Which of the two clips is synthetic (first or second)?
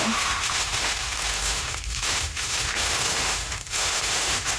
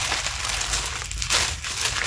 first